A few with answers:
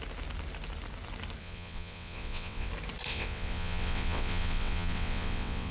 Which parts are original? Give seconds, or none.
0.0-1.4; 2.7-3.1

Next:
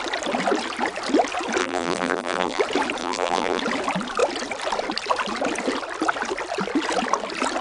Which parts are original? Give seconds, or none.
0.0-1.6; 2.6-3.0; 3.6-7.6

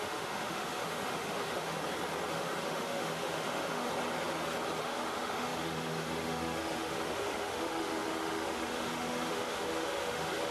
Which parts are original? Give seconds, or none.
1.8-2.3; 3.9-4.8

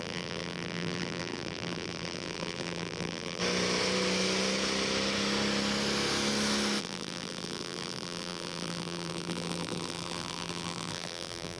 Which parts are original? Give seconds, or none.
3.4-6.8

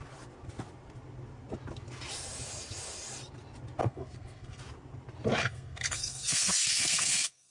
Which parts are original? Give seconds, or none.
0.0-3.8; 4.6-5.4